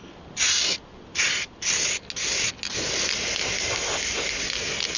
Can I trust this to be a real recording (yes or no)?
yes